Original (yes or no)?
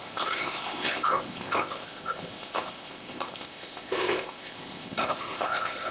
no